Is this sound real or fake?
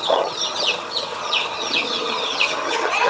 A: fake